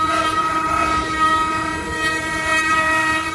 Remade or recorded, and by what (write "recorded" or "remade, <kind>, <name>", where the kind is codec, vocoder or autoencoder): remade, vocoder, BigVGAN v2